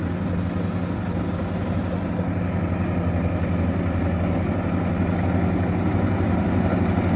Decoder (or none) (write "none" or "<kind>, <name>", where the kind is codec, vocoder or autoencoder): none